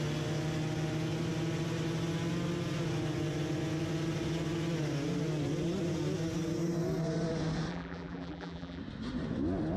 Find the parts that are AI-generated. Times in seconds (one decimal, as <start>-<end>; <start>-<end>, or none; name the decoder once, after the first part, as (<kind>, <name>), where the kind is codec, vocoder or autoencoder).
7.7-8.8 (vocoder, BigVGAN v2)